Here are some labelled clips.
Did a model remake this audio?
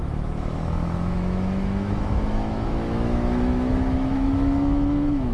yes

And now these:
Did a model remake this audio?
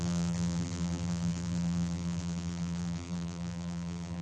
yes